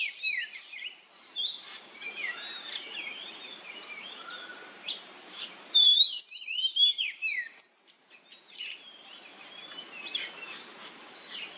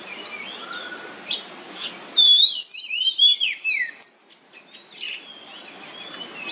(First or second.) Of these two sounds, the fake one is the first